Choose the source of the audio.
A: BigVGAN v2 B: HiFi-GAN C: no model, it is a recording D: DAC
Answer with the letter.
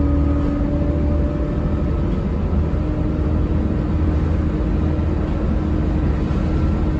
C